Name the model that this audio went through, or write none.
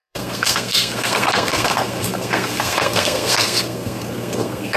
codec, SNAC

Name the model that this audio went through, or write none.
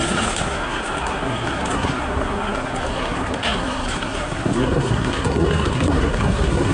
codec, SNAC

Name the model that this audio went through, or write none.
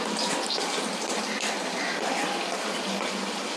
none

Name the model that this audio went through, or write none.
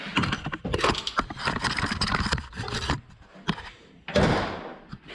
none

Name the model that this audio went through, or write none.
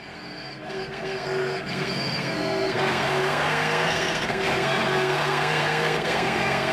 codec, SNAC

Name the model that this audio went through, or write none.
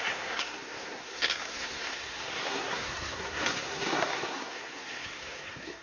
codec, SNAC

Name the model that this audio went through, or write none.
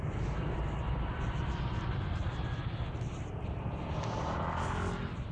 none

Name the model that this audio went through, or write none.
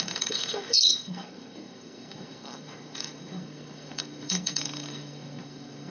codec, SNAC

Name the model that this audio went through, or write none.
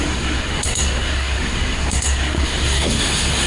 codec, SNAC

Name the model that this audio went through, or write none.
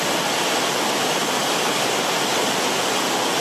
none